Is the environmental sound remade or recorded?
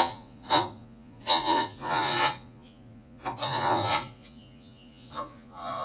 remade